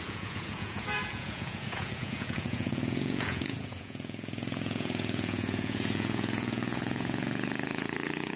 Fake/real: fake